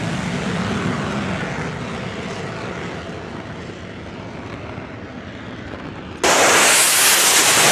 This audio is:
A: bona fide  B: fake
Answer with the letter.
A